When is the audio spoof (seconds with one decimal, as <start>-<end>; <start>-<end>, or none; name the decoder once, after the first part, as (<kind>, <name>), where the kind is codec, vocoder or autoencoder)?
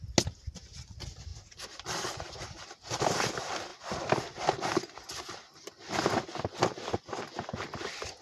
none